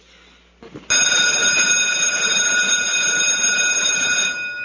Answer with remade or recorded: recorded